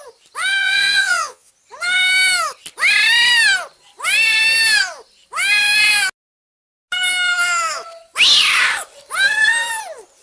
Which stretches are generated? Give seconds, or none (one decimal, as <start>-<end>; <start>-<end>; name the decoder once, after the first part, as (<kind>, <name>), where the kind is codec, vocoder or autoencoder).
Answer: 0.6-1.5 (vocoder, Vocos)